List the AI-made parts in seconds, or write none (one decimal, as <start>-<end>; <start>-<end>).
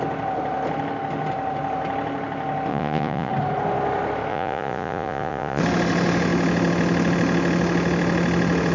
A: 2.7-3.3; 4.3-5.6